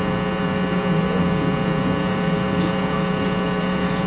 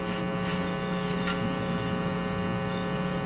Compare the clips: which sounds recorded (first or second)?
second